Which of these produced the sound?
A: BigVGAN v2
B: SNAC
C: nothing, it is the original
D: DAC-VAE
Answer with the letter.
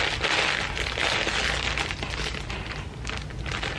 C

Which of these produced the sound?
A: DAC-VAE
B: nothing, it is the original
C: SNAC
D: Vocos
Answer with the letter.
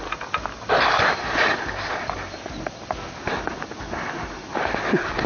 B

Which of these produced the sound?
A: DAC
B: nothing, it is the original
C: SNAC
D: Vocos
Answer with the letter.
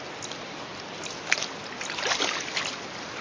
B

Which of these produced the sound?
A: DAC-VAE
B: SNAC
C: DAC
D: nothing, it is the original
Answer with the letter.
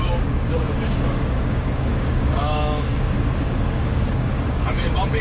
C